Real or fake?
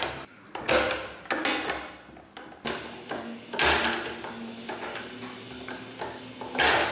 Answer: real